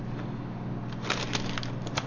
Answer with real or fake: real